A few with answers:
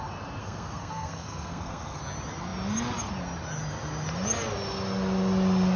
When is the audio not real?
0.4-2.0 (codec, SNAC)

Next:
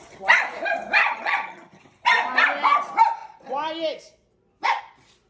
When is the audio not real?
1.0-1.8 (vocoder, HiFi-GAN)

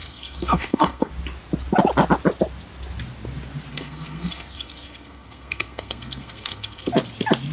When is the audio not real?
0.0-1.1 (codec, SNAC); 3.7-6.9

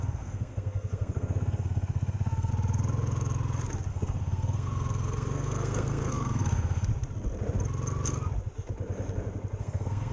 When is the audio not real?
0.0-2.5 (codec, SNAC); 3.9-6.9; 9.6-10.1

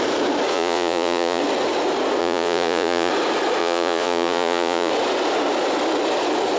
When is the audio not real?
0.5-1.4 (vocoder, Vocos); 2.2-3.1; 3.6-4.9